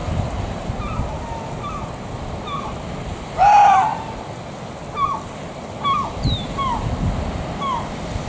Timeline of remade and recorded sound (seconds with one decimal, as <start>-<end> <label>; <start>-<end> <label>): 0.0-1.1 remade; 1.1-8.3 recorded